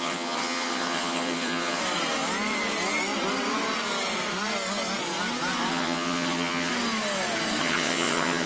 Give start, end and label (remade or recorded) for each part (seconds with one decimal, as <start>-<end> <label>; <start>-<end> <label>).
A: 0.0-1.8 remade; 1.8-5.7 recorded; 5.7-6.7 remade; 6.7-7.6 recorded; 7.6-8.5 remade